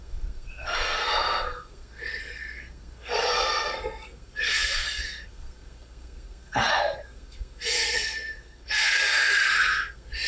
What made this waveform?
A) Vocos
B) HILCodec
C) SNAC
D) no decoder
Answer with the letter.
C